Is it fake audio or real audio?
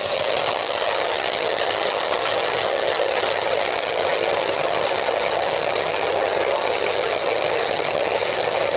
fake